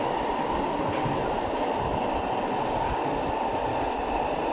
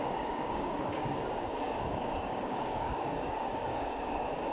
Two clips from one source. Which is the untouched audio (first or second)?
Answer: first